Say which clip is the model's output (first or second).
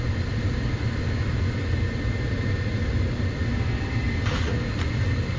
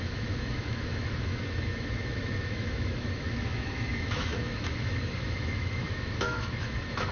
second